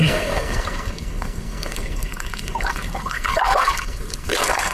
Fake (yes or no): yes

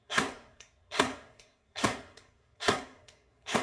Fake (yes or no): yes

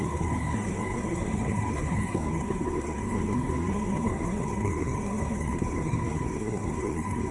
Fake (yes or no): yes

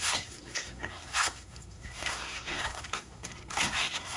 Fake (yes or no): yes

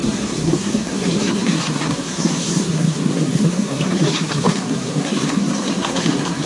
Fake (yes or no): yes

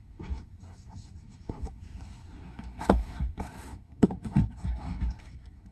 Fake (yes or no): yes